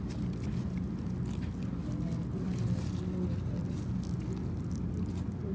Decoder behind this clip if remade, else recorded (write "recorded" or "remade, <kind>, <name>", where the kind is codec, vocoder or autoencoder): recorded